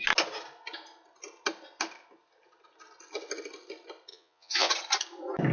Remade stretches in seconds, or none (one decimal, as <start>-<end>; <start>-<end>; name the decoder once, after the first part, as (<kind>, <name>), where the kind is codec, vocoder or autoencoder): 4.1-4.7 (vocoder, Vocos)